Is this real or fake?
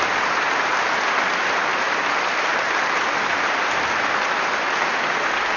real